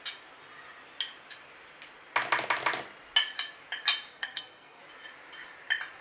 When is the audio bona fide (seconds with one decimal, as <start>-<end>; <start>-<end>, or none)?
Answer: 0.0-4.1; 4.8-6.0